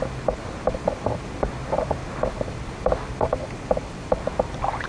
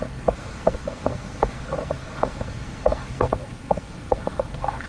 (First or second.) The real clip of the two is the first